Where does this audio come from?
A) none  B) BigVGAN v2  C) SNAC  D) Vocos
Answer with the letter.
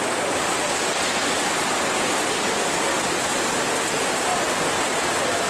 A